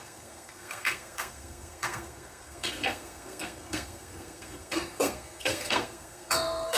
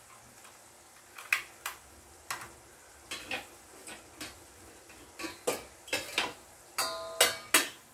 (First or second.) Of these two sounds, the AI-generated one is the first